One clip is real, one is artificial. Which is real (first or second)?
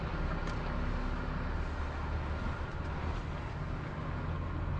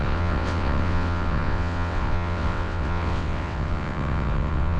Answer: first